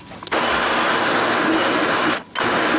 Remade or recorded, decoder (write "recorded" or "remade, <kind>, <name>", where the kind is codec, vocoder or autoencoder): recorded